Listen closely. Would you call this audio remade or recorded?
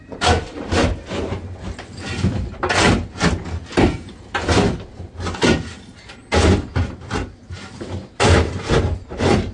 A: recorded